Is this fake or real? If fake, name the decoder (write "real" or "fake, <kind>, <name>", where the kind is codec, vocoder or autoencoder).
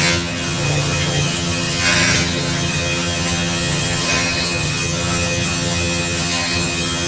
fake, vocoder, HiFi-GAN